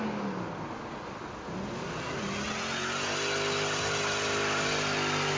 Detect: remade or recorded recorded